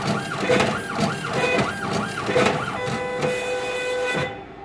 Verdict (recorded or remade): recorded